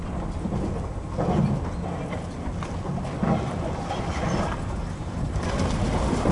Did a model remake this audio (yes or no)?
no